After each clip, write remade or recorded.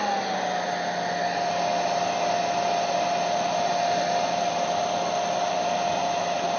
recorded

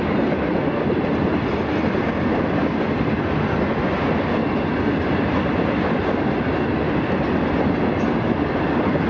recorded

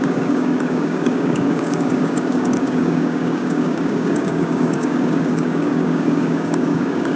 remade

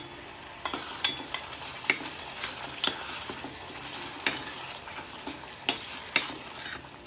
recorded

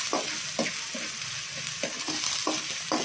recorded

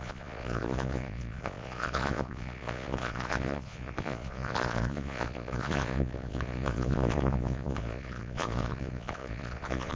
remade